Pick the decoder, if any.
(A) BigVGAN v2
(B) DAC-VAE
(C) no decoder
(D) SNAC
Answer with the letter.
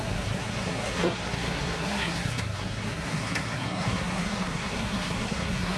D